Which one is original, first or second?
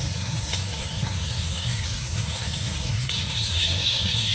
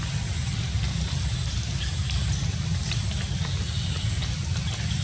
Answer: second